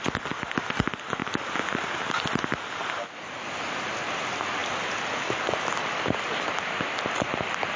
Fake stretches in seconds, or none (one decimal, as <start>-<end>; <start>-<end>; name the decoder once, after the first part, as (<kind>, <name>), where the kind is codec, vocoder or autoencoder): none

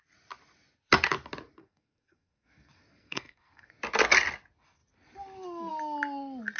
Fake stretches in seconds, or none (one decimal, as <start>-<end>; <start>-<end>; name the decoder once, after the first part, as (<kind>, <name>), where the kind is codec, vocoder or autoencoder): 1.6-3.8 (codec, SNAC)

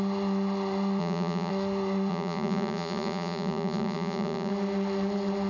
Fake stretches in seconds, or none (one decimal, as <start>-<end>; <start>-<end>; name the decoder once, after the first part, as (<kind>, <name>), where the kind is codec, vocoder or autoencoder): 1.0-1.5 (vocoder, Vocos); 2.1-4.5

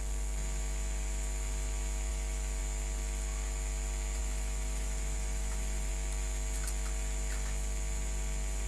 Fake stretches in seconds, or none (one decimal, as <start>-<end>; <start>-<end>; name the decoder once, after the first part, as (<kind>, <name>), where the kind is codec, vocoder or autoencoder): 2.1-2.6 (autoencoder, DAC-VAE); 4.2-5.9

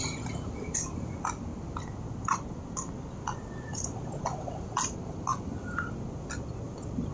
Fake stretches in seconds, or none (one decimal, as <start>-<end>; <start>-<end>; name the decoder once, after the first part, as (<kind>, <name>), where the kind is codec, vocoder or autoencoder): none

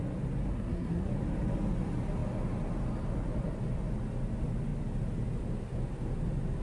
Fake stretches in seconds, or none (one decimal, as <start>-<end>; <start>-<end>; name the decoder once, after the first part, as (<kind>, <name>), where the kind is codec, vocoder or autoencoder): 0.5-1.1 (codec, SNAC)